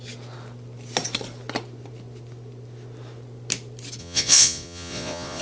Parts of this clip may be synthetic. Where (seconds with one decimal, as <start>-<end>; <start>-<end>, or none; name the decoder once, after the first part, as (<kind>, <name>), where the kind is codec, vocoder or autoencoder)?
4.0-5.4 (vocoder, Vocos)